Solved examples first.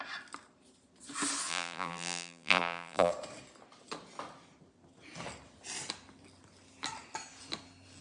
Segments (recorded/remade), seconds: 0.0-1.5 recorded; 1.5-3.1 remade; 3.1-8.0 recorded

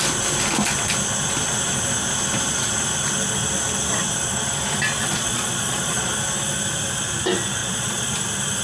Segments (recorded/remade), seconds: 0.0-5.0 recorded; 5.0-6.1 remade; 6.1-7.6 recorded; 7.6-8.1 remade; 8.1-8.6 recorded

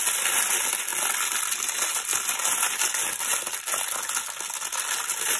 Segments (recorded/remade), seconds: 0.0-5.4 recorded

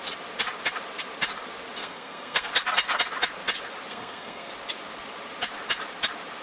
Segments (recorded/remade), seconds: 0.0-1.8 recorded; 1.8-2.5 remade; 2.5-3.9 recorded; 3.9-4.5 remade; 4.5-6.4 recorded

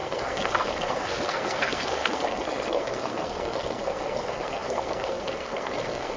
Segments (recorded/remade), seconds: 0.0-6.2 remade

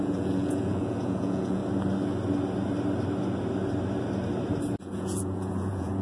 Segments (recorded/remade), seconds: 0.0-1.6 remade; 1.6-4.8 recorded; 4.8-6.0 remade

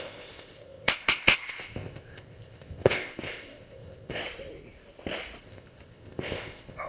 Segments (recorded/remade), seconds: 0.0-4.2 remade; 4.2-5.4 recorded; 5.4-6.9 remade